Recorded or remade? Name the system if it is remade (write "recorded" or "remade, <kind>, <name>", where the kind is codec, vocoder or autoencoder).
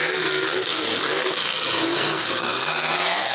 remade, codec, SNAC